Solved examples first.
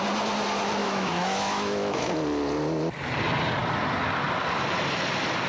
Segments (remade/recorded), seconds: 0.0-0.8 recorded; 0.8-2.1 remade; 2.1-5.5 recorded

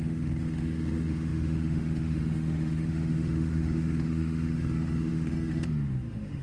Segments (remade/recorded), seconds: 0.0-6.4 remade